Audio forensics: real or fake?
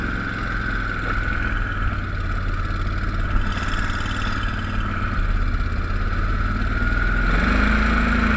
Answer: real